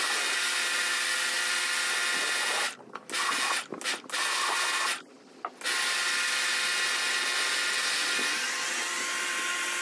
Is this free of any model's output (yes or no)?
yes